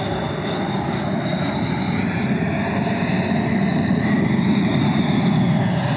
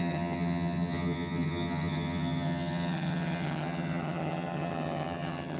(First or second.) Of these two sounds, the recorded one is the first